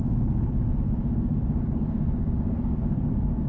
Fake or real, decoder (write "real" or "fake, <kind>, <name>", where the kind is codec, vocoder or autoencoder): fake, codec, DAC